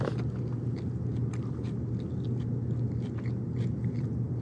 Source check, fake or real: real